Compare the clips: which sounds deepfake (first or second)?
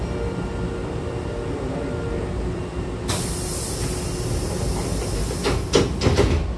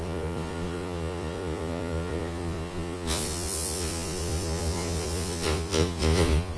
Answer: second